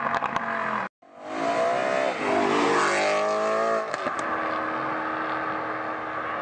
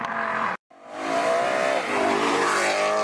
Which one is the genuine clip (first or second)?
first